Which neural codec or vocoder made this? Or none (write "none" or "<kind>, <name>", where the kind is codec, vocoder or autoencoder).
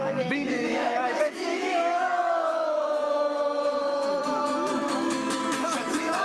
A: autoencoder, DAC-VAE